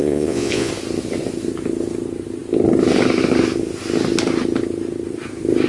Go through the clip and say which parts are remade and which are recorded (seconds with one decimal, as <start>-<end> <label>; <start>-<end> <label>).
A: 0.0-0.7 remade; 0.7-5.7 recorded